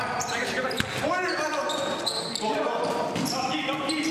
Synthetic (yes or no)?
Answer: yes